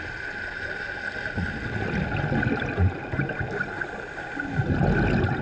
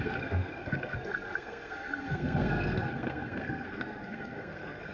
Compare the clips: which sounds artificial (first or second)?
second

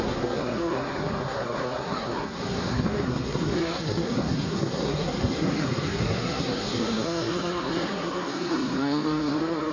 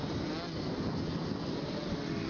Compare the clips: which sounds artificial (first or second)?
first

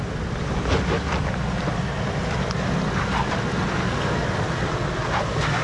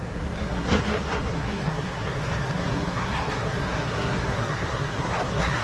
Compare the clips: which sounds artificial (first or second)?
second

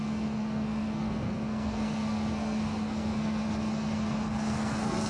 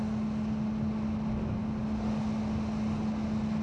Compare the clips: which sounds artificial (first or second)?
first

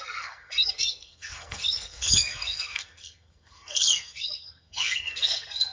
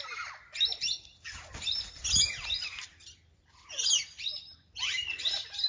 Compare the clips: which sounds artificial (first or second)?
first